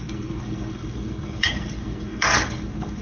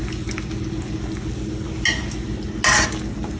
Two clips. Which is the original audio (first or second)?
second